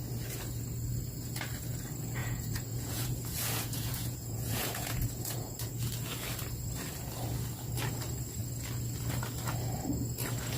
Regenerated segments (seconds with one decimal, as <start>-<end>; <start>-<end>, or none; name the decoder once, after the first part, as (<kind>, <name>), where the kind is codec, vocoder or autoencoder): 2.2-5.7 (vocoder, Vocos)